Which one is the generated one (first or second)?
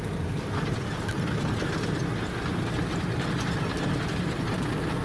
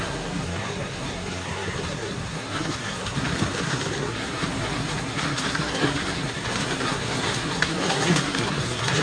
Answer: second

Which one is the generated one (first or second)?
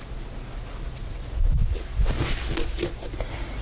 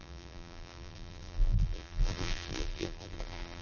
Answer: second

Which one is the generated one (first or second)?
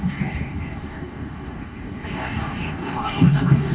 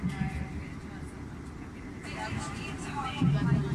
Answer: first